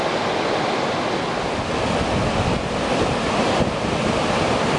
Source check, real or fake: real